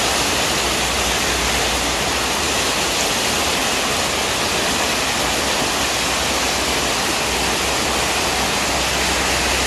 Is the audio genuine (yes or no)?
yes